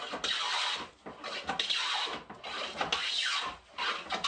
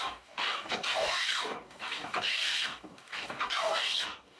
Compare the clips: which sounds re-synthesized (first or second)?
second